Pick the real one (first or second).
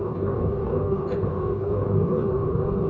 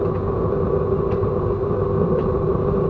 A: second